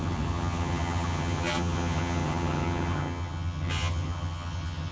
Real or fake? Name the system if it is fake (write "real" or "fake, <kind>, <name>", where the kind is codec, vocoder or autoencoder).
fake, vocoder, HiFi-GAN